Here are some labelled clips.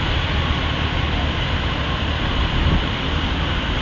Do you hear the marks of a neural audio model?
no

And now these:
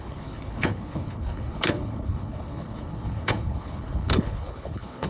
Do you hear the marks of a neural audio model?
yes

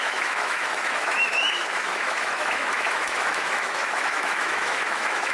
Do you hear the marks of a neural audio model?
yes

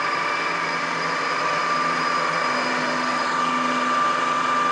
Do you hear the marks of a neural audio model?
no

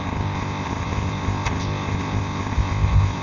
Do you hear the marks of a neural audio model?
yes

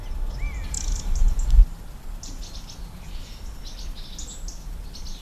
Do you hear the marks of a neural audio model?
no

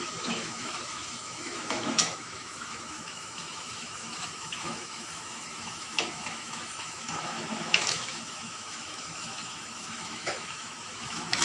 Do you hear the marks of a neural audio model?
yes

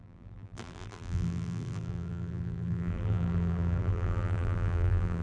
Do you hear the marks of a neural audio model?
yes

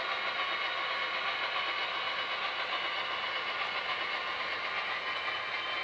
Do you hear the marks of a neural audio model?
no